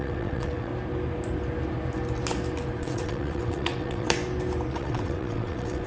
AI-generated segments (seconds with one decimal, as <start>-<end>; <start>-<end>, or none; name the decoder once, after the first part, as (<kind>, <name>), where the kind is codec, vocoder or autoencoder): 0.0-0.7 (vocoder, WaveNeXt); 2.8-4.2; 4.7-5.9